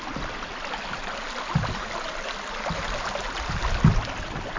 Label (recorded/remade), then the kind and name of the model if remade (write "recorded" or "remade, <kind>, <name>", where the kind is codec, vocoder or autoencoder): recorded